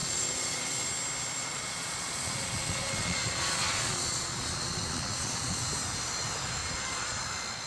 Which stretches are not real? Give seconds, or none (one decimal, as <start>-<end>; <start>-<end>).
0.0-0.7; 1.4-5.6; 6.6-7.2